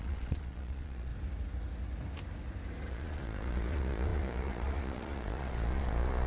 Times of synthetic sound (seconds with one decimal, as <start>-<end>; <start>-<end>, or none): 0.0-1.1; 2.9-6.3